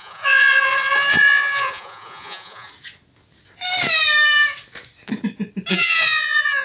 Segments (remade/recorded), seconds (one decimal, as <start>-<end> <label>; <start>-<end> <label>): 0.0-2.7 remade; 2.7-5.7 recorded; 5.7-6.6 remade